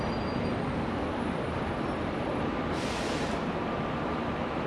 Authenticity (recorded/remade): recorded